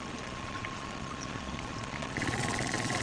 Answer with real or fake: fake